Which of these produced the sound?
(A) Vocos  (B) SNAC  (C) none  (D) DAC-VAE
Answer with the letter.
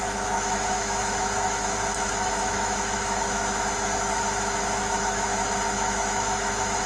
D